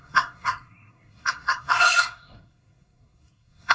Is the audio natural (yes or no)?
no